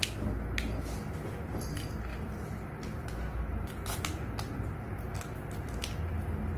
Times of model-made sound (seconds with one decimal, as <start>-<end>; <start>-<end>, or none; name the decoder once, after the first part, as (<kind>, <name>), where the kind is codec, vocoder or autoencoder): 2.1-2.8 (vocoder, BigVGAN v2); 3.3-4.9